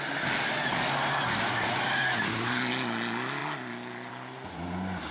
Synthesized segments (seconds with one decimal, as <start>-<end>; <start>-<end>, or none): none